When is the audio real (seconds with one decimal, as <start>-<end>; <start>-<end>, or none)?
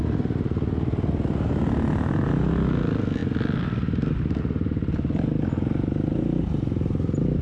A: 0.0-7.4